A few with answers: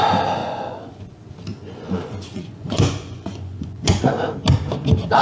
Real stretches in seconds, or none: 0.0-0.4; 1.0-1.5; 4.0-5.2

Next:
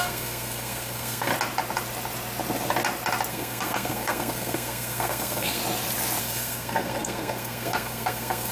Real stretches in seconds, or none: 1.3-3.3; 5.6-6.2

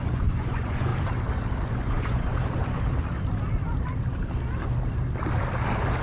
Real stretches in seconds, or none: 0.9-1.7; 2.3-6.0

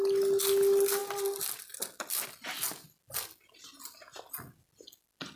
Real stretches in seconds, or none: 0.0-5.4

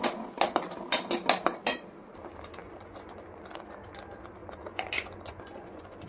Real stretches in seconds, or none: 0.0-2.6; 3.4-4.4

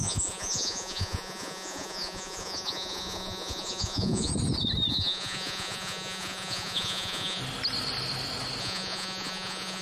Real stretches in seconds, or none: 4.3-4.9; 7.4-8.6

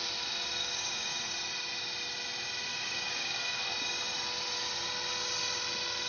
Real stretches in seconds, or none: 0.0-0.6; 1.3-2.7; 3.6-6.1